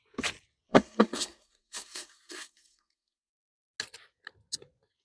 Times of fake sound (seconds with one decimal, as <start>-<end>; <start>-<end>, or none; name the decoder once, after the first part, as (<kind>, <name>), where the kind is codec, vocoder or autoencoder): 0.7-3.3 (codec, SNAC)